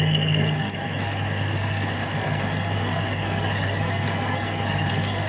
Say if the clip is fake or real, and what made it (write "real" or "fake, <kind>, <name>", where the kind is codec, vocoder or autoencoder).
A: fake, codec, SNAC